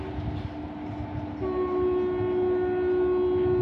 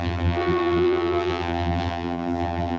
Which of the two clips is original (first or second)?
first